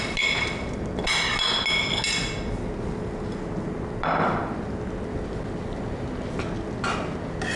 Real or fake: real